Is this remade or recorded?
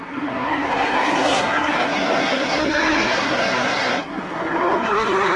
remade